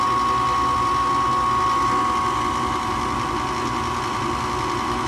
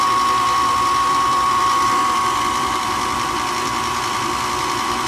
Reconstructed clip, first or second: second